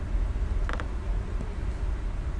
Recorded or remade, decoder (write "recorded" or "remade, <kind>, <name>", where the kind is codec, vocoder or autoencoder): recorded